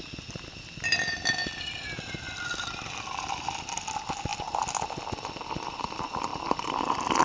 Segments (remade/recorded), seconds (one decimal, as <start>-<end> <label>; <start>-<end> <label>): 0.0-1.4 recorded; 1.4-3.8 remade; 3.8-6.3 recorded; 6.3-7.2 remade